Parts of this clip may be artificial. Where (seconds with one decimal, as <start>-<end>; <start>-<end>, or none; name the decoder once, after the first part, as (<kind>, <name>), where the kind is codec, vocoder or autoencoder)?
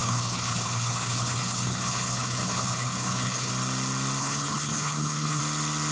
0.0-3.5 (codec, HILCodec); 4.2-5.4